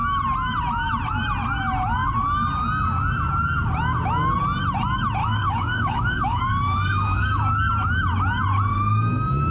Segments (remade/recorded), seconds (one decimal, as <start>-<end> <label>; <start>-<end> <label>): 0.0-5.2 recorded; 5.2-7.7 remade; 7.7-8.7 recorded; 8.7-9.5 remade